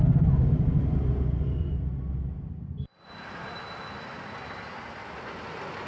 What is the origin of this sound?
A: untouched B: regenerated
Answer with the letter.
A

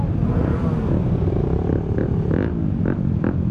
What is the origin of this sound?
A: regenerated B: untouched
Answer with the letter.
B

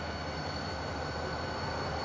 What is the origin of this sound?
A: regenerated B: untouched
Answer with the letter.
B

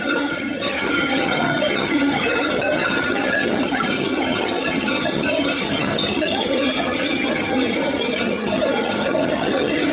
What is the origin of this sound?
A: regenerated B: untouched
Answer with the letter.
A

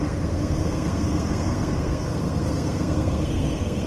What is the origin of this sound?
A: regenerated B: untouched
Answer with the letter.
A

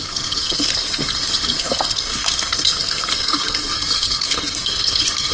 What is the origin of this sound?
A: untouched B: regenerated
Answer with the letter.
B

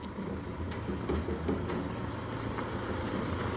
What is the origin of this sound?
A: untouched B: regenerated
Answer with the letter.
A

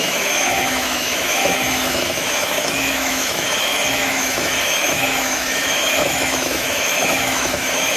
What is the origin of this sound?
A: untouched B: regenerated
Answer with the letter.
B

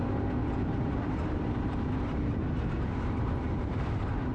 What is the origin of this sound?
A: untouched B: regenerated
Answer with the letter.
B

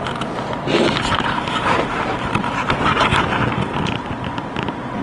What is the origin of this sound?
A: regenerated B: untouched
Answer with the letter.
B